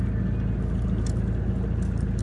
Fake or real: real